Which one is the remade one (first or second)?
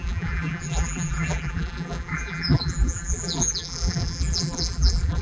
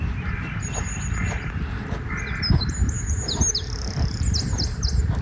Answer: first